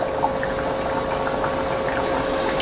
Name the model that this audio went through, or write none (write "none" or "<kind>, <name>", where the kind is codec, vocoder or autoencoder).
none